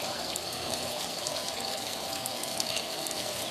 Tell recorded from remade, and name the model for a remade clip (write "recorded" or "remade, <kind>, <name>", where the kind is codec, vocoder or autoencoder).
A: remade, codec, SNAC